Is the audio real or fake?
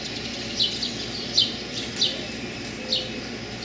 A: real